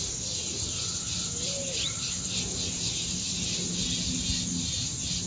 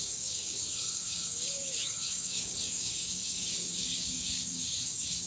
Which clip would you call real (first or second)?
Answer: first